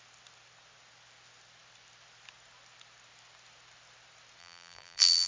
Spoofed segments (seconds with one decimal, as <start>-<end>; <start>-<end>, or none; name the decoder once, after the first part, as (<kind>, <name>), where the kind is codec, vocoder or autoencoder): 4.4-5.3 (vocoder, BigVGAN v2)